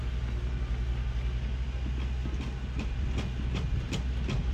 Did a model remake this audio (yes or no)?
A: no